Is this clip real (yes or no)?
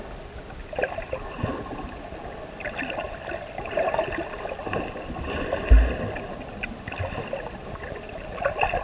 yes